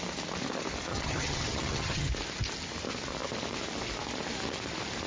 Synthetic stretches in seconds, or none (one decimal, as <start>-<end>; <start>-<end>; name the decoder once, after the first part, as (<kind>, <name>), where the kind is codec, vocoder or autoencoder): 0.9-2.1 (vocoder, HiFi-GAN)